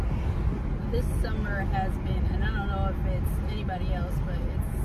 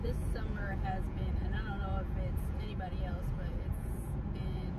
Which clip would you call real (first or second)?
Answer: first